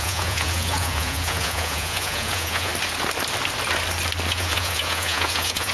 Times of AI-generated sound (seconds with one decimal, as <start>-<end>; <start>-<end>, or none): 0.0-2.7; 4.3-5.7